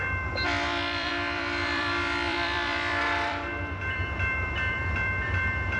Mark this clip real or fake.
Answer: fake